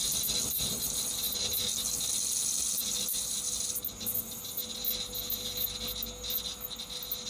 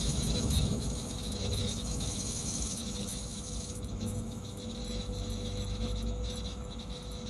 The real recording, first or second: first